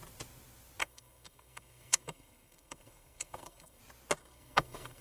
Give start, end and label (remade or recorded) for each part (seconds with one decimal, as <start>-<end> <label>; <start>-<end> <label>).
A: 0.0-0.8 recorded; 0.8-3.8 remade; 3.8-4.2 recorded; 4.2-5.0 remade